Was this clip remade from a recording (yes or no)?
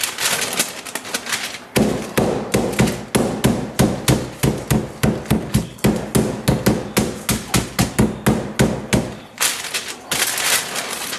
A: no